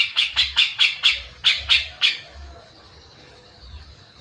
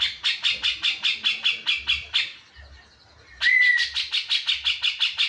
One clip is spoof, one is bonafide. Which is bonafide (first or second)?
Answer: second